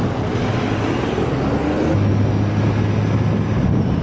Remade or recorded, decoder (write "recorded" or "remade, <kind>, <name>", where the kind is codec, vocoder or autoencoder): recorded